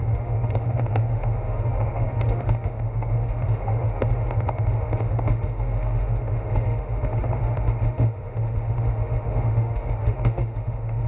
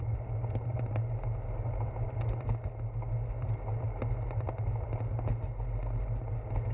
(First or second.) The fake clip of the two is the first